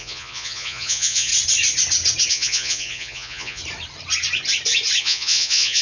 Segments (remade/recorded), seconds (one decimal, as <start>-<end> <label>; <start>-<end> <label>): 0.0-1.3 remade; 1.3-2.3 recorded; 2.3-3.6 remade; 3.6-5.0 recorded; 5.0-5.8 remade